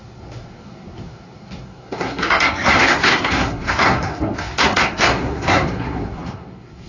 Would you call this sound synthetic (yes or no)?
yes